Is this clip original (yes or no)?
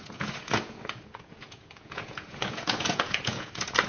no